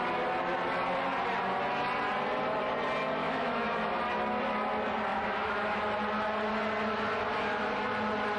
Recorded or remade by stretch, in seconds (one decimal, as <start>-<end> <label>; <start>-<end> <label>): 0.0-3.2 recorded; 3.2-4.0 remade; 4.0-5.1 recorded; 5.1-5.8 remade; 5.8-8.4 recorded